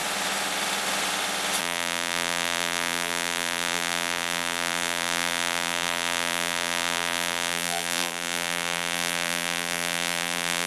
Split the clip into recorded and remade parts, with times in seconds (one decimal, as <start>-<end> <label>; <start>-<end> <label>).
0.0-1.6 recorded; 1.6-10.7 remade